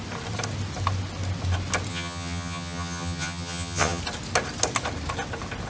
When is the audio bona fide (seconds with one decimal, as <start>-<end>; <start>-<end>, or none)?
0.0-1.9; 4.0-5.7